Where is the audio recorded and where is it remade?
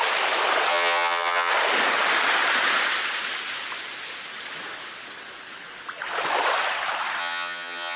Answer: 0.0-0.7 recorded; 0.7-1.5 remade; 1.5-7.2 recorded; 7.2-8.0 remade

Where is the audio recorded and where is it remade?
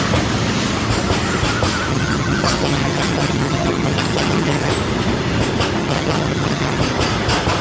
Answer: 0.0-1.9 recorded; 1.9-4.7 remade; 4.7-5.8 recorded; 5.8-6.8 remade; 6.8-7.6 recorded